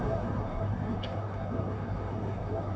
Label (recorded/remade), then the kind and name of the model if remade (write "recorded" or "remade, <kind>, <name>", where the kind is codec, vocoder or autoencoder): remade, codec, SNAC